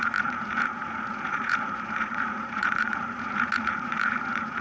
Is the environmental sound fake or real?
fake